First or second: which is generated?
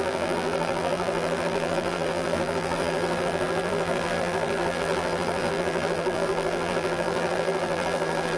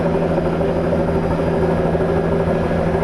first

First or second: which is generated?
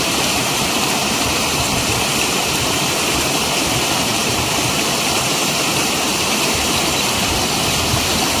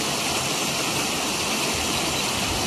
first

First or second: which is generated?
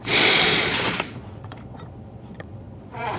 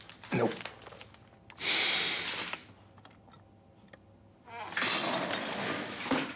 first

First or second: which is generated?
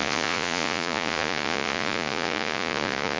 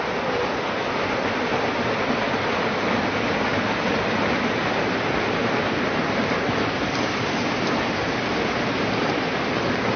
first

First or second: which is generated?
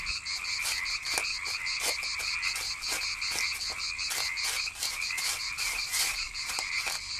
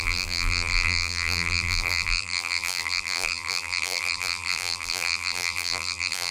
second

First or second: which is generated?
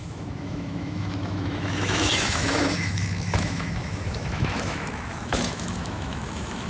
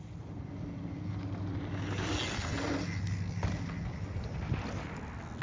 first